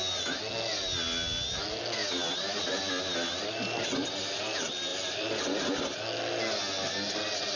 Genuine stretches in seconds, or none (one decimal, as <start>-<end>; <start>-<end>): 0.0-2.0; 3.8-4.9; 5.7-7.6